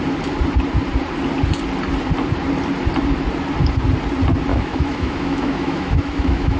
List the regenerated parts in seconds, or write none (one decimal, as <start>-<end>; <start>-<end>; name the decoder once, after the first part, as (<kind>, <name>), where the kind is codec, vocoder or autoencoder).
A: 4.5-6.6 (autoencoder, DAC-VAE)